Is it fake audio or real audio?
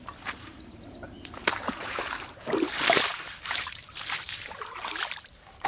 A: fake